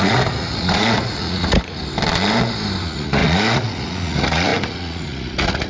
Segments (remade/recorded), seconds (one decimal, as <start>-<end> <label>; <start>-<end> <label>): 0.0-1.8 remade; 1.8-2.8 recorded; 2.8-5.7 remade